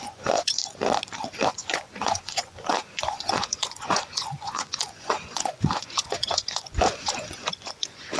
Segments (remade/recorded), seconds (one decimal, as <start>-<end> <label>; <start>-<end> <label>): 0.0-0.6 remade; 0.6-1.5 recorded; 1.5-8.2 remade